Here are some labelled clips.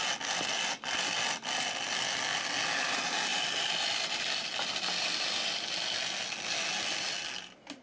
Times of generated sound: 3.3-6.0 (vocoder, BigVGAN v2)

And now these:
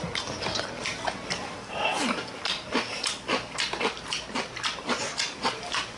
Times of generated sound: none

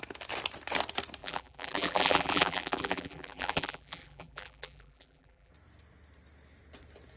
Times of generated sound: 1.2-5.5 (vocoder, BigVGAN v2)

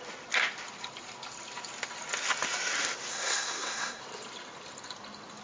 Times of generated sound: 3.1-4.0 (codec, SNAC)